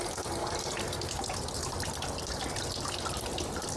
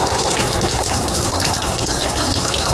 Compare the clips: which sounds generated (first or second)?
second